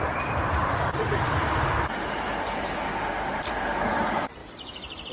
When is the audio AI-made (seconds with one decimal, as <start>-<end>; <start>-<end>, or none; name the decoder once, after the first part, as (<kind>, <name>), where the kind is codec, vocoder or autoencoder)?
0.0-4.4 (vocoder, BigVGAN v2)